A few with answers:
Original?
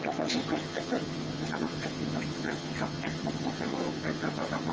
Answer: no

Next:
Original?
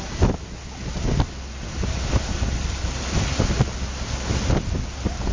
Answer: yes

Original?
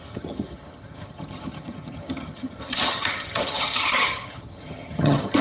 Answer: no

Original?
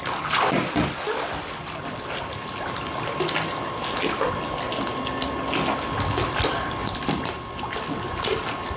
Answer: yes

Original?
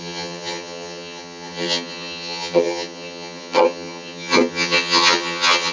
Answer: no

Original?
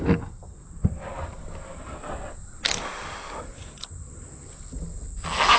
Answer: yes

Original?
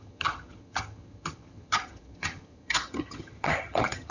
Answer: no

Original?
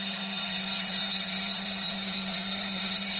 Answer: no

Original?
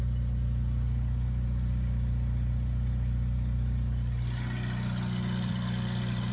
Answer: yes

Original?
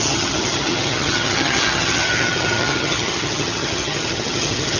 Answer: no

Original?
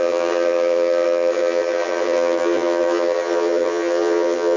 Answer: no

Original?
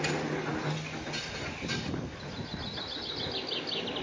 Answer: yes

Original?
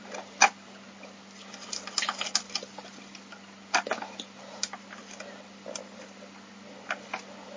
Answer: yes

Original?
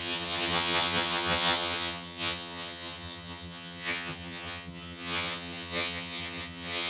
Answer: no